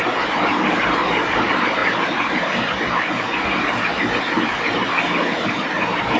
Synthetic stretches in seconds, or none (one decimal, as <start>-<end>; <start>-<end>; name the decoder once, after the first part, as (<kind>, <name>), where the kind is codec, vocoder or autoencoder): none